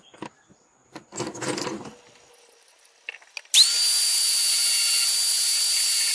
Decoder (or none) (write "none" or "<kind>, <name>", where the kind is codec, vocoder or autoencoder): none